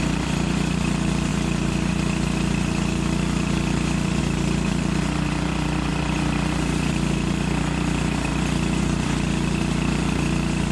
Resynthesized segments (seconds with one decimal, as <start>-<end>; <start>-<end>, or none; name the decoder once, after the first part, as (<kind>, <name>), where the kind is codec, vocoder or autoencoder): 0.0-8.3 (vocoder, BigVGAN v2); 8.8-10.7